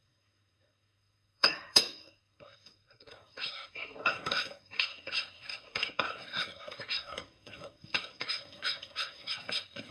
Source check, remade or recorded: remade